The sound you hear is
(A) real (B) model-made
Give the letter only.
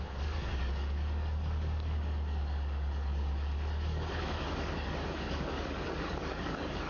B